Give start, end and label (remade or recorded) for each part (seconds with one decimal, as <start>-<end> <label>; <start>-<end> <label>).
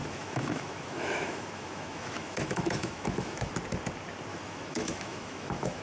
0.0-3.5 remade; 3.5-4.3 recorded; 4.3-5.8 remade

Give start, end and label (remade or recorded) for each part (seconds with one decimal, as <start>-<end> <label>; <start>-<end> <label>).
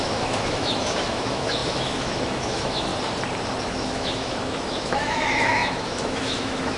0.0-2.9 remade; 2.9-3.6 recorded; 3.6-6.8 remade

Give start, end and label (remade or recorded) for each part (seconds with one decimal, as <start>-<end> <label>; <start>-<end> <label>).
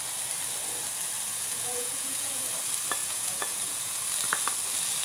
0.0-1.3 recorded; 1.3-2.4 remade; 2.4-3.0 recorded; 3.0-4.0 remade; 4.0-5.0 recorded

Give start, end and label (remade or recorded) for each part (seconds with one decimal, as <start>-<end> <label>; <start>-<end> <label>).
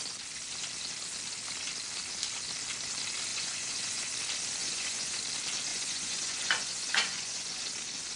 0.0-3.3 recorded; 3.3-4.1 remade; 4.1-4.6 recorded; 4.6-5.2 remade; 5.2-5.7 recorded; 5.7-7.6 remade; 7.6-8.2 recorded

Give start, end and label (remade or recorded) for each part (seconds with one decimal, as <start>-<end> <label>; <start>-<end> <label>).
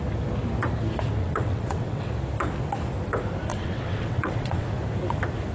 0.0-1.2 recorded; 1.2-2.1 remade; 2.1-3.5 recorded; 3.5-4.7 remade; 4.7-5.5 recorded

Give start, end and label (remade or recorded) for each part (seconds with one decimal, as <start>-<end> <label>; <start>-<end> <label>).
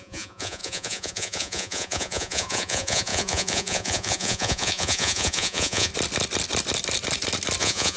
0.0-5.9 remade; 5.9-7.6 recorded; 7.6-8.0 remade